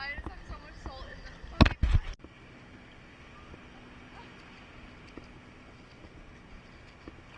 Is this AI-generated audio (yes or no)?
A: no